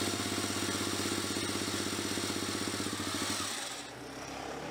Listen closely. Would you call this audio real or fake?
real